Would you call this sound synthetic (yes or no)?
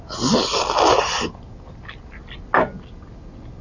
no